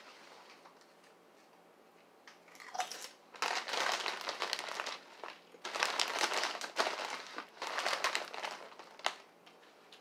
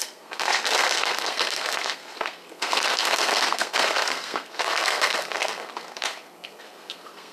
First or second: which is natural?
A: first